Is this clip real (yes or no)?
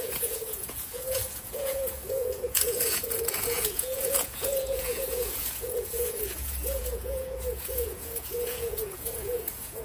no